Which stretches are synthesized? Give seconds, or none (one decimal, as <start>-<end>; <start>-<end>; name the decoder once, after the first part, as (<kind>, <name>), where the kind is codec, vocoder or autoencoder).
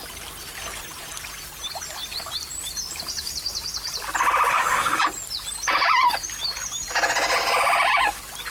4.5-5.0 (autoencoder, DAC-VAE)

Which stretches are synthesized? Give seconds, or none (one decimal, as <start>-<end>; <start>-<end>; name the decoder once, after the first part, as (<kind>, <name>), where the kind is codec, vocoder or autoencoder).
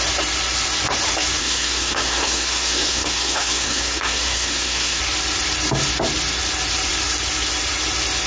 1.4-5.0 (codec, SNAC)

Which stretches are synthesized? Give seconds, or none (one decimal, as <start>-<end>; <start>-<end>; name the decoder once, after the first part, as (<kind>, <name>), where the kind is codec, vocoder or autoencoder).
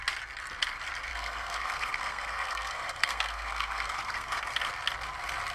1.1-4.4 (codec, SNAC)